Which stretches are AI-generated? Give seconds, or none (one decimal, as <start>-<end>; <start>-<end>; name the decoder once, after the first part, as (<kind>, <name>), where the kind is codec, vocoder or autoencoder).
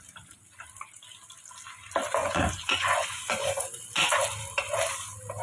2.2-3.8 (vocoder, Vocos)